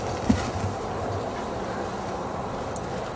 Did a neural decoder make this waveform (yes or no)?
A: no